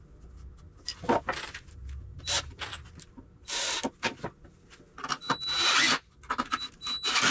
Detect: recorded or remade recorded